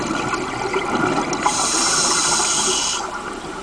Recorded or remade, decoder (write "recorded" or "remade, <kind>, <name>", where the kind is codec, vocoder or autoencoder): recorded